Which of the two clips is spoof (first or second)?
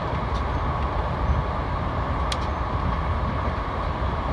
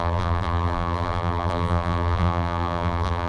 second